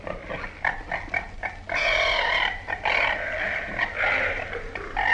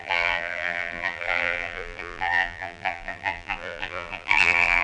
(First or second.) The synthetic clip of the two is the second